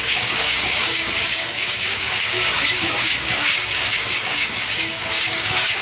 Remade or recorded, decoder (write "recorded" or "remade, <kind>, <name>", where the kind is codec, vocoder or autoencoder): remade, codec, DAC